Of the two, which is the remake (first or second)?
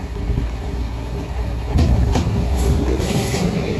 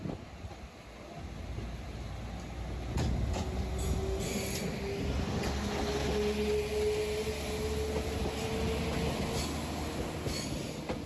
first